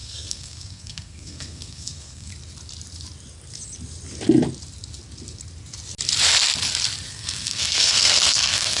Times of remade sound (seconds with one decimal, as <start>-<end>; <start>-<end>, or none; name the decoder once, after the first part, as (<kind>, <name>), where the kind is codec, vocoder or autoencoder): 0.0-2.3 (codec, SNAC); 7.1-8.8